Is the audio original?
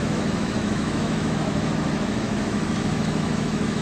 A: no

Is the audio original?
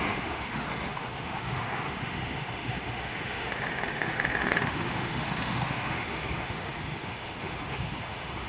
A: no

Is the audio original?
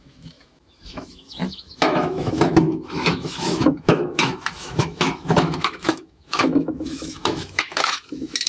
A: no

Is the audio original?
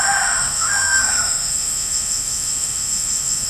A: no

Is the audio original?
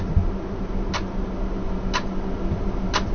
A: yes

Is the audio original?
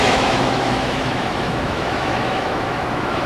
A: no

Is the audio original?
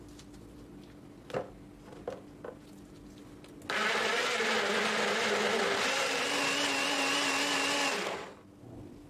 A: yes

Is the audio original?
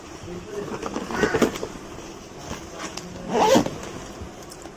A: yes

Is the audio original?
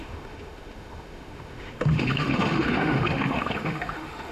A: no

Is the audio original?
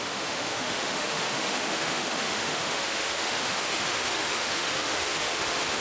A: no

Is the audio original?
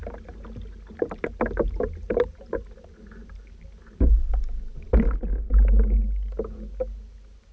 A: yes